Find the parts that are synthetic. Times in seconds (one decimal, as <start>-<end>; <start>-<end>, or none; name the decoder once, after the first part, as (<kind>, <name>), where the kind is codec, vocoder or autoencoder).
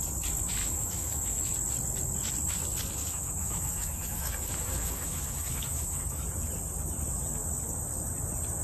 0.6-1.5 (autoencoder, DAC-VAE); 3.0-6.0